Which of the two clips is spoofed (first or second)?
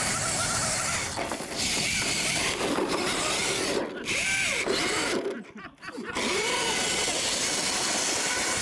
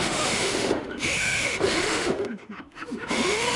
second